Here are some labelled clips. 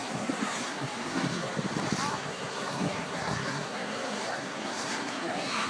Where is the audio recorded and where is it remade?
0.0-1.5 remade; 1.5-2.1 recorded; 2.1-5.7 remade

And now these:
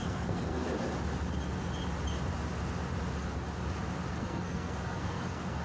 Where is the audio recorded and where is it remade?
0.0-0.7 remade; 0.7-4.1 recorded; 4.1-5.6 remade